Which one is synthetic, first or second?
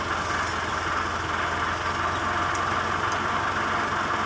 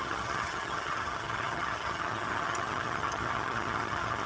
second